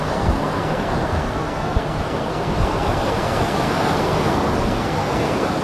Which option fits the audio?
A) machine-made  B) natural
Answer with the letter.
A